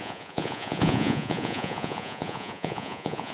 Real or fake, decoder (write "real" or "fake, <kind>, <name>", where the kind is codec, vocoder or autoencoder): fake, vocoder, Vocos